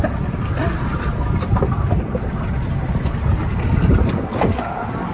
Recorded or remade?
recorded